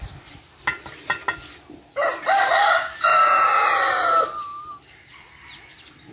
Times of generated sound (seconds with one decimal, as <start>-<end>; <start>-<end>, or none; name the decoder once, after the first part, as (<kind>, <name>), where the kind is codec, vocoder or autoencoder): none